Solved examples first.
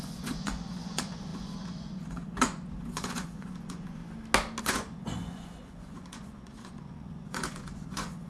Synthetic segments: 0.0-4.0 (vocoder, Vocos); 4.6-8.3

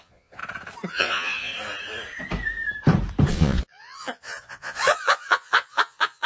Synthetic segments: 0.0-0.4 (vocoder, Vocos); 0.9-1.5; 3.3-6.3

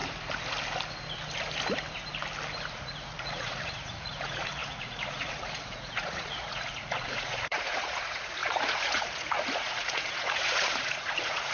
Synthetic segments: 2.7-11.5 (vocoder, Vocos)

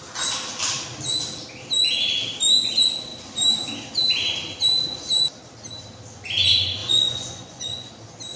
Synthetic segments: 6.8-7.9 (vocoder, Vocos)

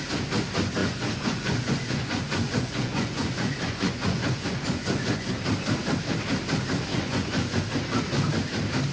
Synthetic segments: 0.8-5.3 (vocoder, Vocos); 6.9-7.6